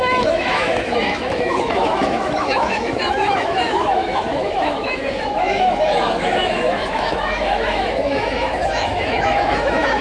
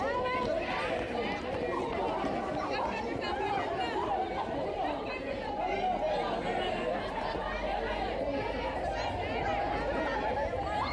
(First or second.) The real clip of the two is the second